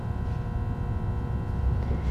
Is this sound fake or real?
real